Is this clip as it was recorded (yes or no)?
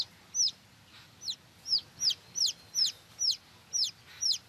yes